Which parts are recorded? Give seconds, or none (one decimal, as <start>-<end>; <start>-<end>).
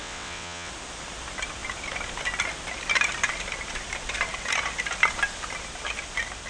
0.7-6.5